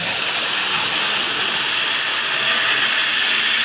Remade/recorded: recorded